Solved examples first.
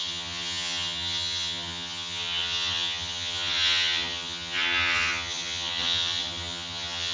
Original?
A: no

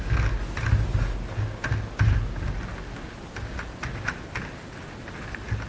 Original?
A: yes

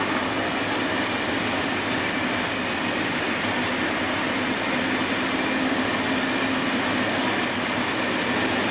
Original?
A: yes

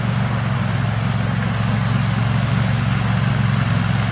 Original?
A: yes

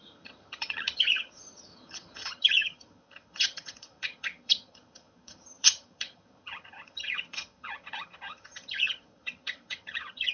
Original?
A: no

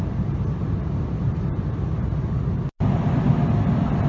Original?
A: yes